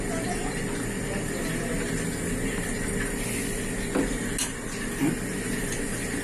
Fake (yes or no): no